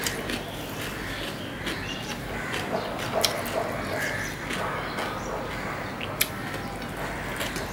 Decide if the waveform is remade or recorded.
recorded